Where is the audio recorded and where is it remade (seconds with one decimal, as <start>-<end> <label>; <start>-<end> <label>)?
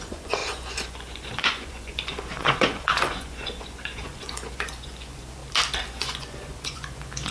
0.0-5.4 remade; 5.4-5.9 recorded; 5.9-7.3 remade